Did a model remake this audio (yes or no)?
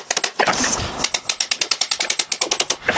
no